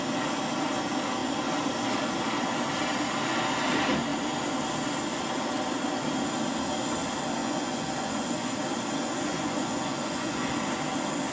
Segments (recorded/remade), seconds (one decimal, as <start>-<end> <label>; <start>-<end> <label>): 0.0-7.4 recorded; 7.4-8.5 remade; 8.5-9.0 recorded; 9.0-10.5 remade; 10.5-11.3 recorded